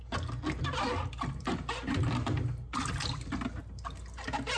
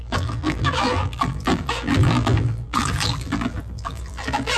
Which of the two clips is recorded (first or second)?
first